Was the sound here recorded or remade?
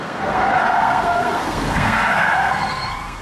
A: remade